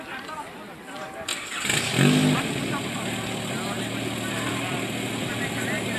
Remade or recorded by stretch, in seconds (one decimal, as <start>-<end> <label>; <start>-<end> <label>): 0.0-1.3 recorded; 1.3-1.9 remade; 1.9-6.0 recorded